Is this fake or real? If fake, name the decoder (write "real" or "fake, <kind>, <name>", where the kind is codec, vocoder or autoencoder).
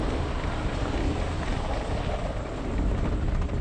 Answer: real